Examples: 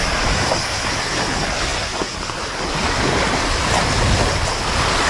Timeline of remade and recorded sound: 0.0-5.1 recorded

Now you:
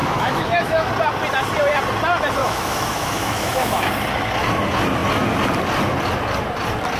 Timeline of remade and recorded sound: 0.0-0.9 remade; 0.9-2.4 recorded; 2.4-3.9 remade; 3.9-7.0 recorded

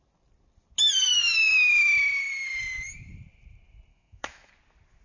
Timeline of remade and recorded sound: 0.0-1.1 recorded; 1.1-1.9 remade; 1.9-3.9 recorded; 3.9-4.5 remade; 4.5-5.0 recorded